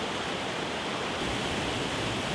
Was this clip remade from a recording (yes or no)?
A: no